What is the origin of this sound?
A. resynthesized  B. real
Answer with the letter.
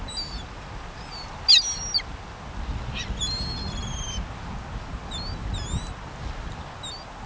B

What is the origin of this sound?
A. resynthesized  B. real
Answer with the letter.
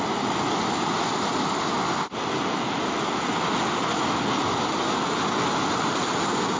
B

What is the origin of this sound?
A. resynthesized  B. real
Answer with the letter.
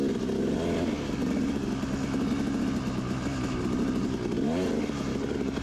B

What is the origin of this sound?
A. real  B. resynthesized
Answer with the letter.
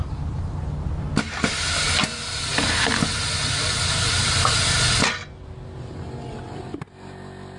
A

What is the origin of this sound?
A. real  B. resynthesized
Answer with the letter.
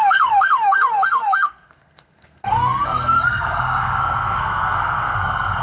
B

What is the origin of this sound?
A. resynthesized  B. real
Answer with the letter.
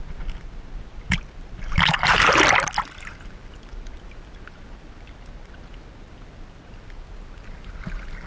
B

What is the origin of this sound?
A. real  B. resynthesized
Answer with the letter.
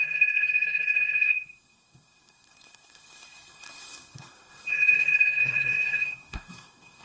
B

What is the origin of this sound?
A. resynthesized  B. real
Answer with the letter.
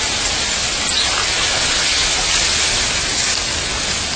B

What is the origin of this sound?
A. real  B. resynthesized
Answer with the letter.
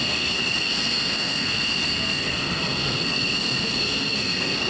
B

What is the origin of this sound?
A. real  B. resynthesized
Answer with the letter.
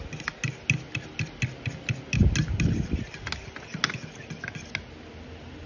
A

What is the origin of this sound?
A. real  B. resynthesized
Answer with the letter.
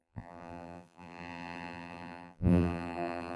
B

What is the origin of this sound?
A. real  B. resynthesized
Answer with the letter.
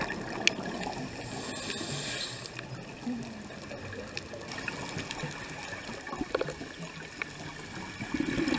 A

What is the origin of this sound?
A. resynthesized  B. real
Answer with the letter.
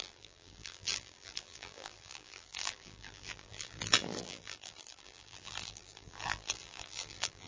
A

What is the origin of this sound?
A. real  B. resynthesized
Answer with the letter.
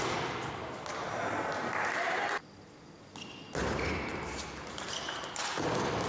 A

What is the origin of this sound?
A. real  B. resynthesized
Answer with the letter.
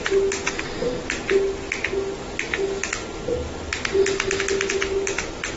A